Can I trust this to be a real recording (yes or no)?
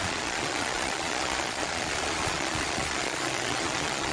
no